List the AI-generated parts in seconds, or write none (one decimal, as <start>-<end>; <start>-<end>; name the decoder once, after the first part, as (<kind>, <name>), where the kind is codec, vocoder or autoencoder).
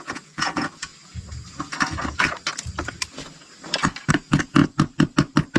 0.0-0.9 (vocoder, Vocos); 4.1-4.6